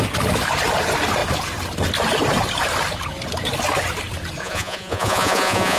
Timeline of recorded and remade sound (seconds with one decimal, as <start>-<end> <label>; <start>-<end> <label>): 0.0-4.4 recorded; 4.4-5.8 remade